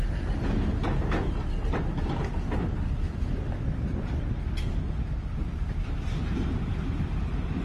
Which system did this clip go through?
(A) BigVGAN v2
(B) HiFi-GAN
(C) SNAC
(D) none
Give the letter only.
D